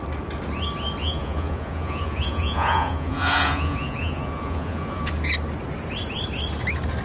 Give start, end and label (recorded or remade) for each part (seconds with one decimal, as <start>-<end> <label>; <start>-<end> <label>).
0.0-1.0 recorded; 1.0-5.1 remade; 5.1-7.0 recorded